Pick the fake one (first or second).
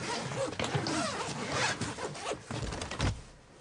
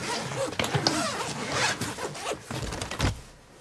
first